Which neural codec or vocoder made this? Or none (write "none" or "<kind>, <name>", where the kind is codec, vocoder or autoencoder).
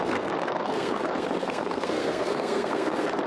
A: codec, SNAC